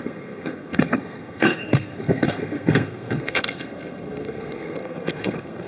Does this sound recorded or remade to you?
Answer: remade